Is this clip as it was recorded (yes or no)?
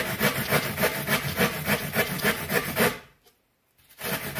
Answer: yes